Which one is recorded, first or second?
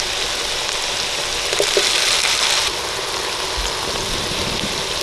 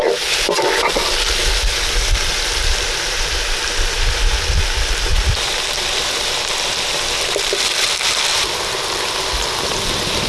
first